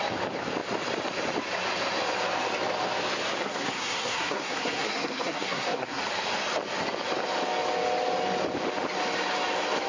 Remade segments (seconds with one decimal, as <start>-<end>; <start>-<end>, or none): 3.4-6.0